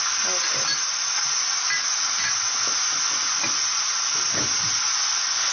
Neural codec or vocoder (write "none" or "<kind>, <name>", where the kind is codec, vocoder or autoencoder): none